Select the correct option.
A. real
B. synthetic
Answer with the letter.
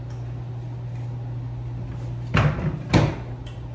A